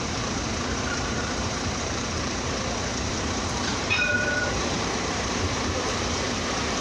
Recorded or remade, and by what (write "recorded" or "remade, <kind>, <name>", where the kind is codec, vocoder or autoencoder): remade, vocoder, BigVGAN v2